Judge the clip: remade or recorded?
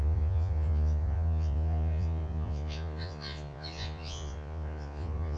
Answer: remade